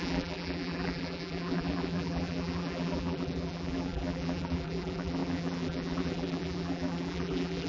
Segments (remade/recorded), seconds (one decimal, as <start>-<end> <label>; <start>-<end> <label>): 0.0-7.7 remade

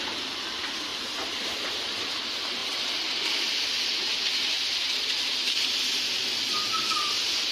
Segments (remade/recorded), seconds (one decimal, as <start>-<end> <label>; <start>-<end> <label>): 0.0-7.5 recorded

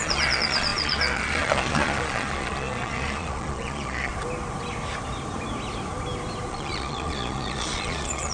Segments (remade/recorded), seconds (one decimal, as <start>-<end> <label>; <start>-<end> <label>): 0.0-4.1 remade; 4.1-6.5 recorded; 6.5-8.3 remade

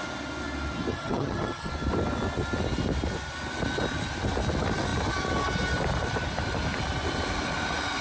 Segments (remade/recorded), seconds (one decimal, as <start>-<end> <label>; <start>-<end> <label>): 0.0-0.9 recorded; 0.9-1.7 remade; 1.7-8.0 recorded

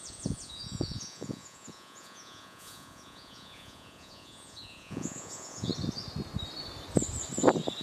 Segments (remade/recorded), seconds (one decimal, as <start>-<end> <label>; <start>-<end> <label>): 0.0-5.7 remade; 5.7-7.8 recorded

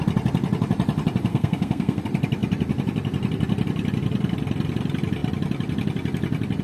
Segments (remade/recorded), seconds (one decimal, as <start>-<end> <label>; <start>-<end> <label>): 0.0-1.3 recorded; 1.3-2.0 remade; 2.0-6.6 recorded